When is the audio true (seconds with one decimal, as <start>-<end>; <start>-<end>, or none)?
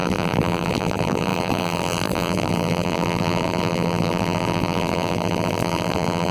none